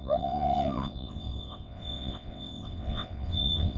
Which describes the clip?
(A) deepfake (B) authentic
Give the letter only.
A